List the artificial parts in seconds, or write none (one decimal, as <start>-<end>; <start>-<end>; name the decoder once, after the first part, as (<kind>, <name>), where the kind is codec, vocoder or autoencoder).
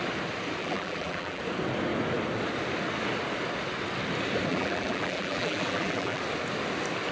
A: 0.6-1.4 (vocoder, BigVGAN v2); 4.5-6.2